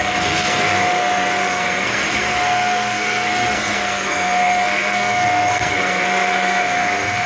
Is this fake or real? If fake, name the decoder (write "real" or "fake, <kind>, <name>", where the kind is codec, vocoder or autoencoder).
fake, codec, SNAC